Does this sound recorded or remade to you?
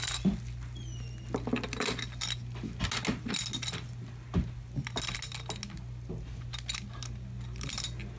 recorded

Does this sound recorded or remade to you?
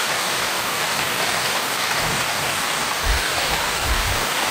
remade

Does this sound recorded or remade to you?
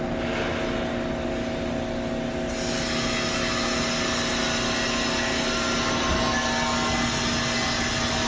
recorded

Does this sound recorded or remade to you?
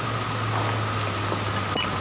recorded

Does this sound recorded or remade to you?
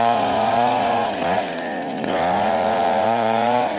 remade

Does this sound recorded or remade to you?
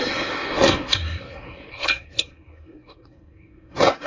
remade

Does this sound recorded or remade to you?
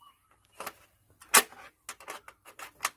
recorded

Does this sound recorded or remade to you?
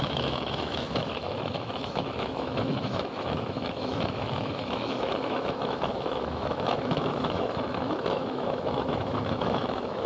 remade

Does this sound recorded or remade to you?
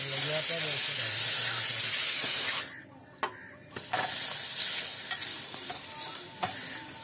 recorded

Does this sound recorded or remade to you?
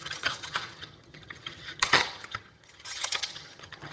remade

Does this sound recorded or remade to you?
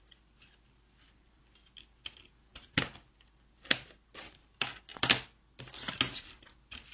recorded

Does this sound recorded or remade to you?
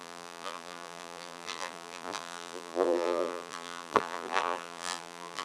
remade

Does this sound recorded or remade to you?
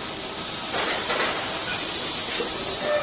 recorded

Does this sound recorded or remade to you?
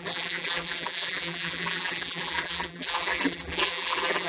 remade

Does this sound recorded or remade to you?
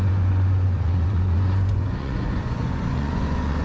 remade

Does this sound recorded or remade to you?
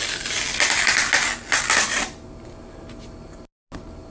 recorded